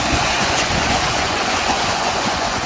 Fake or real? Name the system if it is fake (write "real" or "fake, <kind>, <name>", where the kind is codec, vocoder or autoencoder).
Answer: fake, vocoder, Vocos